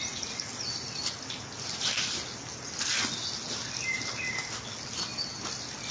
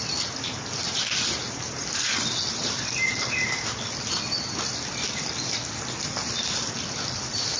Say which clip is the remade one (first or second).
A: second